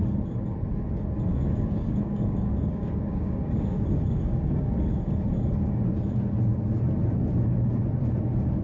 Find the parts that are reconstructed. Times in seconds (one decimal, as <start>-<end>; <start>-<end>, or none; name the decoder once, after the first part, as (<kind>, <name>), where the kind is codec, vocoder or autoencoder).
1.3-5.1 (codec, DAC)